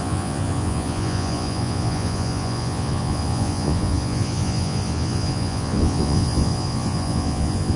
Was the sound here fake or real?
fake